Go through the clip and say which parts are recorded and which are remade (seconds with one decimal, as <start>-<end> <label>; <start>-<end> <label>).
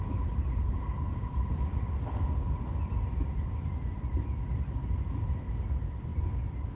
0.0-6.1 recorded; 6.1-6.8 remade